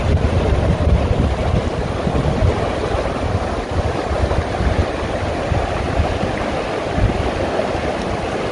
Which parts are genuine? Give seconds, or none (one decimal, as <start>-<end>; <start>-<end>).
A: 0.0-8.5